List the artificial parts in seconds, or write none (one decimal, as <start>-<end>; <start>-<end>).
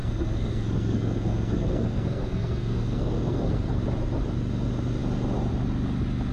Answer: 0.0-3.8